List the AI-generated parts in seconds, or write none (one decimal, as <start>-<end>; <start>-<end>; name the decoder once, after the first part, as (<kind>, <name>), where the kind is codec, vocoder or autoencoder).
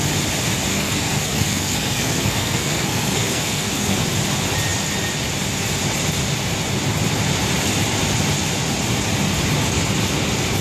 0.7-4.0 (codec, SNAC)